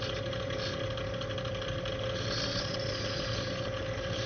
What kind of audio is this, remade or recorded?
recorded